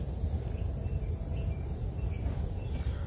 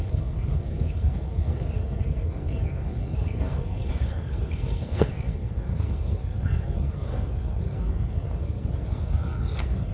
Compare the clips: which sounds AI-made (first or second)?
second